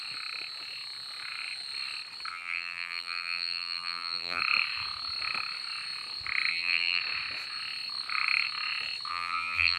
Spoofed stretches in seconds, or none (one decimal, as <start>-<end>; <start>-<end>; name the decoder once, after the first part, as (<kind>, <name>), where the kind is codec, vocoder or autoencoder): 2.3-4.4 (vocoder, BigVGAN v2); 6.5-7.0; 9.1-9.8